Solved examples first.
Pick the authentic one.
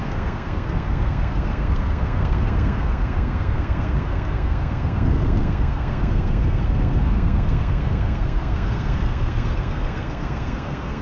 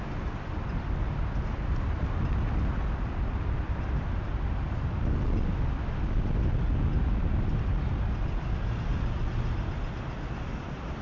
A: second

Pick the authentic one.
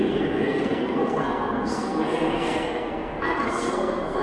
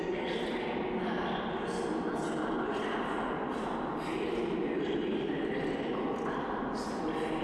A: second